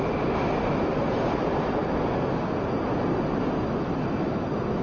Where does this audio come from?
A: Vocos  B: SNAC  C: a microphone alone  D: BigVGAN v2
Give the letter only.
C